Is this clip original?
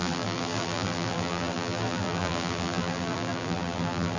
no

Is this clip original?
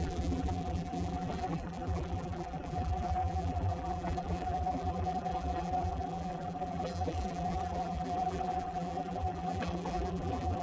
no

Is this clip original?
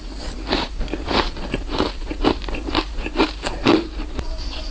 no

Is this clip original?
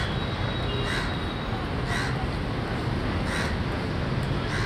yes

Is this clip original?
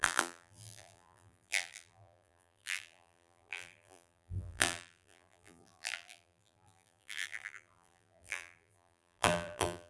no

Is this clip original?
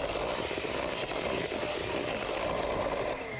yes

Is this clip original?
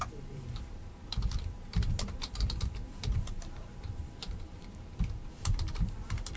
no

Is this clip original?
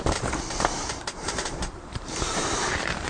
no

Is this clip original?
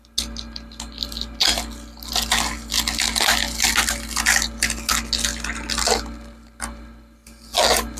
yes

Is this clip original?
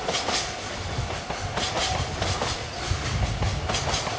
yes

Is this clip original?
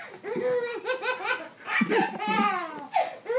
yes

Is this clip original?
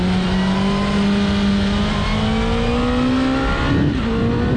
yes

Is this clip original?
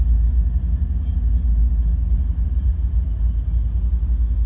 yes